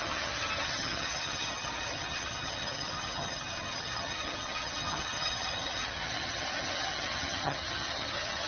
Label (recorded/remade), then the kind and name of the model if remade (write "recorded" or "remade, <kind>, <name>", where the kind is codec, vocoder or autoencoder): remade, vocoder, HiFi-GAN